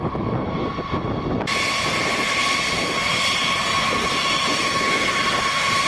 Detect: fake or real real